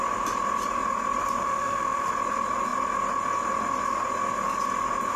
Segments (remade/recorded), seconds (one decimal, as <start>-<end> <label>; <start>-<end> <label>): 0.0-1.4 recorded; 1.4-2.1 remade; 2.1-5.2 recorded